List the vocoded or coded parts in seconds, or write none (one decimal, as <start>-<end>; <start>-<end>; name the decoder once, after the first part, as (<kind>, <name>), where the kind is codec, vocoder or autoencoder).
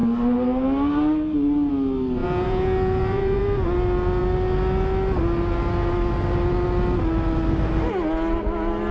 2.2-3.4 (vocoder, Vocos)